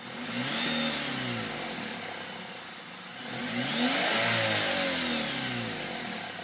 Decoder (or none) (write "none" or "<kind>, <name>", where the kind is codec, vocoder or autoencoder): none